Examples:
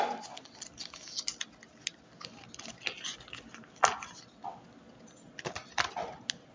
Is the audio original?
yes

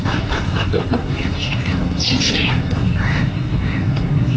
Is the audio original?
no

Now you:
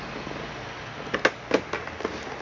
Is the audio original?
yes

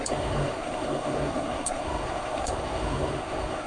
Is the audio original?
no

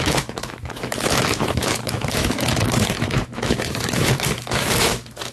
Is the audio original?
no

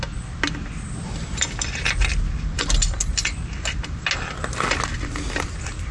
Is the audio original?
yes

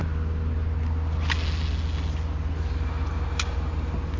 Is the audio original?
yes